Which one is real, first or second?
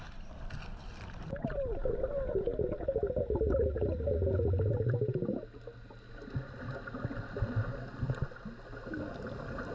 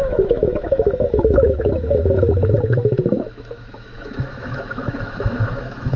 first